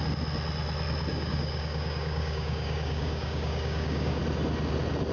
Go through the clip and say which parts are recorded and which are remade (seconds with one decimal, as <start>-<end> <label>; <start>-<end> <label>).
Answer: 0.0-1.1 recorded; 1.1-4.2 remade; 4.2-5.1 recorded